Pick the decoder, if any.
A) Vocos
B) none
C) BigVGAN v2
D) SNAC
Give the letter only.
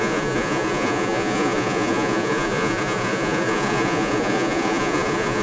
A